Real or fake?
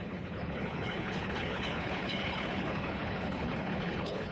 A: fake